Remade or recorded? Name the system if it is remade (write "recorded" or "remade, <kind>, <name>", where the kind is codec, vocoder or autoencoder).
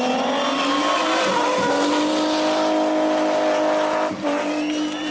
recorded